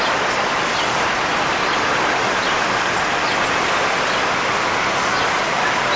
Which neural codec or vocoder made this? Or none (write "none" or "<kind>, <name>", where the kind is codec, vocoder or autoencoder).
none